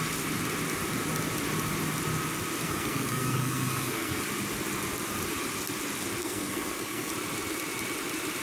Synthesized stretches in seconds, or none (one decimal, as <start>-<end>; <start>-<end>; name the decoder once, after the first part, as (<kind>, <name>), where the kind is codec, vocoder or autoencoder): 2.6-4.2 (codec, SNAC); 6.2-7.1